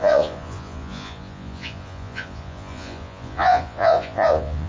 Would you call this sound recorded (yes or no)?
no